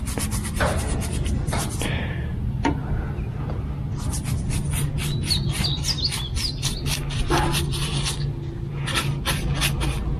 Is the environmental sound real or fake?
real